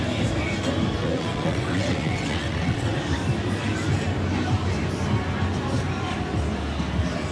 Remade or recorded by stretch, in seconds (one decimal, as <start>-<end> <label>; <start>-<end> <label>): 0.0-1.0 recorded; 1.0-3.0 remade; 3.0-7.3 recorded